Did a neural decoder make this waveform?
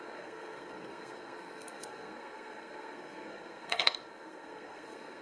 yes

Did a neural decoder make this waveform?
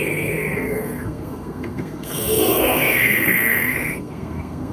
yes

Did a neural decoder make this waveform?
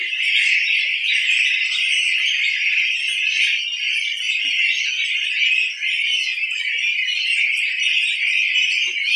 no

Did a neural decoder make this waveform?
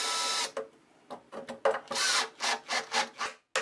no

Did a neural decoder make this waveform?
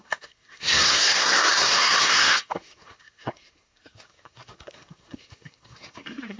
yes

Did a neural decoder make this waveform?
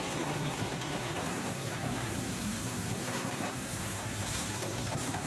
yes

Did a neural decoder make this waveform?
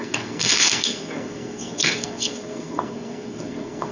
yes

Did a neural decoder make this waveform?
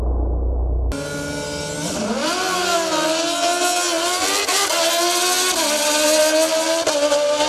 no